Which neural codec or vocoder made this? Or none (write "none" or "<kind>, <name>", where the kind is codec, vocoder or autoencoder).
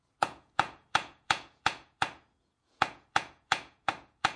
vocoder, Vocos